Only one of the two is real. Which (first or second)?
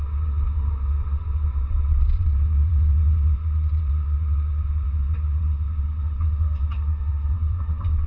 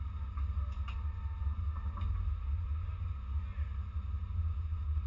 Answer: second